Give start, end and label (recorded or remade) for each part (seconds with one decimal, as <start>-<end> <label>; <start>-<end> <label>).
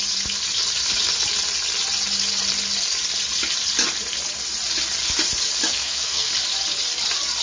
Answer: 0.0-5.7 recorded; 5.7-6.3 remade; 6.3-7.4 recorded